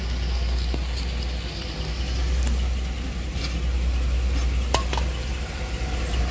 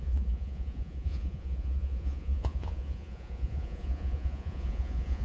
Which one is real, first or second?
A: first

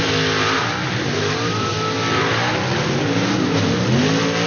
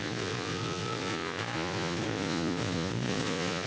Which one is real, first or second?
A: first